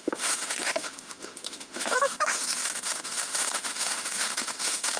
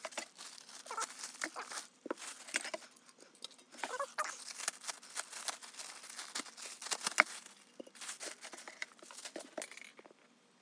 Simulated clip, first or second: first